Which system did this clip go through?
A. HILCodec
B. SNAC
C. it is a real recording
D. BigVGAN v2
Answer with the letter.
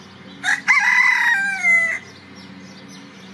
C